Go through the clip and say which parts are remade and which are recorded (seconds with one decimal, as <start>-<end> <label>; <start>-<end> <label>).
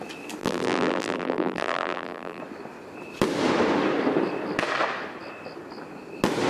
0.0-0.4 recorded; 0.4-2.4 remade; 2.4-6.5 recorded